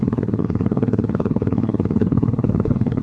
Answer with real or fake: fake